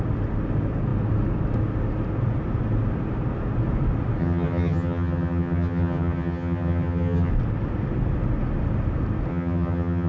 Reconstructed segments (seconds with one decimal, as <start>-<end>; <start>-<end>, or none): 4.2-7.3; 9.3-10.1